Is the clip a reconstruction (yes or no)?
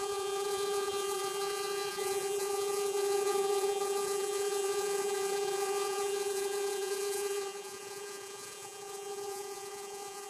yes